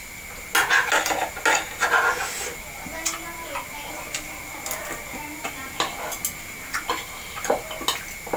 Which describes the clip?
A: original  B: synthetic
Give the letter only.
A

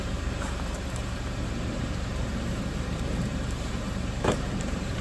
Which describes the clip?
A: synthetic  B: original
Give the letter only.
A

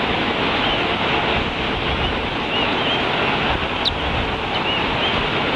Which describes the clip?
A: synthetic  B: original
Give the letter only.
B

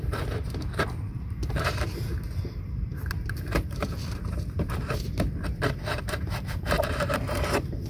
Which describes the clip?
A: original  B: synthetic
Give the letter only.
B